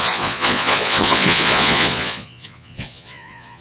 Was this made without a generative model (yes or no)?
no